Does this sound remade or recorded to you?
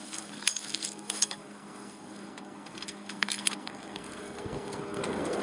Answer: remade